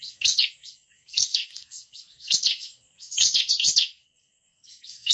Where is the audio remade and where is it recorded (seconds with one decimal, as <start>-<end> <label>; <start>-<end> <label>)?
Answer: 0.0-5.1 remade